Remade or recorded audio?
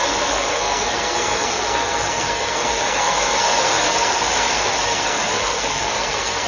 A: remade